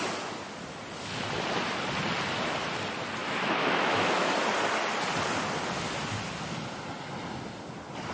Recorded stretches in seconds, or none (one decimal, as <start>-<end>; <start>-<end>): 0.0-3.2; 4.3-8.1